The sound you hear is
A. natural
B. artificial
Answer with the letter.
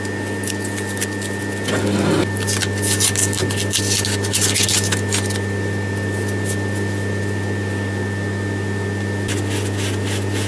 A